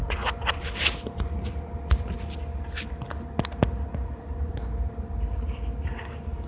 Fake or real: real